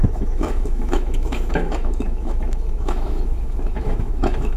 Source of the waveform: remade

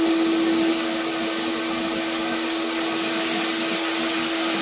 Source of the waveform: recorded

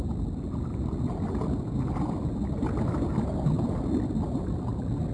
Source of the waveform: recorded